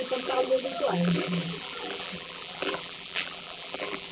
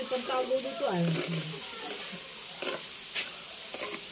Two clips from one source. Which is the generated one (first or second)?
first